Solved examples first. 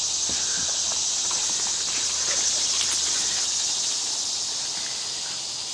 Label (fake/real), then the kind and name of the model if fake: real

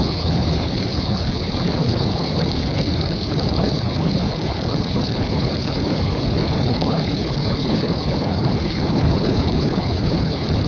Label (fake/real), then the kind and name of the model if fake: fake, codec, HILCodec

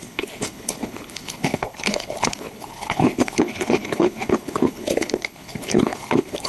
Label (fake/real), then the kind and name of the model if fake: fake, codec, HILCodec